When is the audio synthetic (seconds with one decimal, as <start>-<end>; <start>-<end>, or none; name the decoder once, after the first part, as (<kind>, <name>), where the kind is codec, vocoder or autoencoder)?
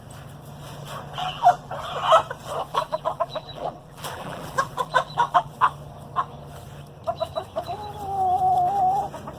1.2-1.7 (vocoder, BigVGAN v2); 2.7-5.5